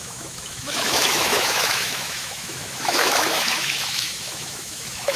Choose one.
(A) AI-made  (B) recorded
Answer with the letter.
A